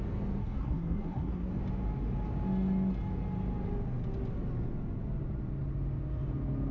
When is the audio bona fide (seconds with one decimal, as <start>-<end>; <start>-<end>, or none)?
0.0-0.4; 1.5-6.7